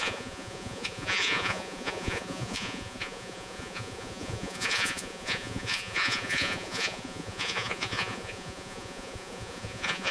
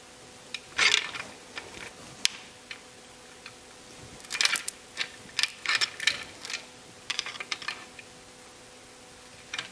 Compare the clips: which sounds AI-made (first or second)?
first